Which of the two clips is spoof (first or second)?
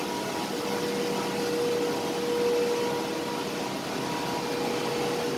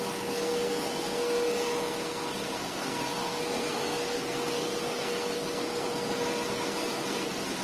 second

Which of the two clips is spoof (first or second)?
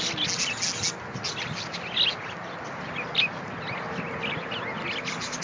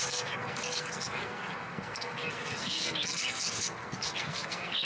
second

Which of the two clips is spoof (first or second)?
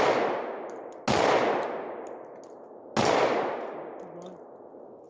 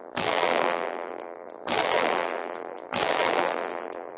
second